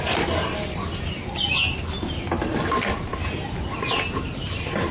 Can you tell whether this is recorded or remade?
recorded